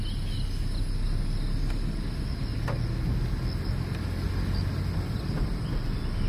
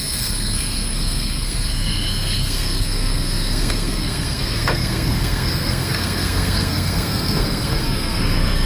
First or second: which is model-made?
second